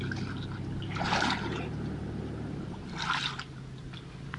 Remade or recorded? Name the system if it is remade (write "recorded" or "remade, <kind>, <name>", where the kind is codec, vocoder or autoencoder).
recorded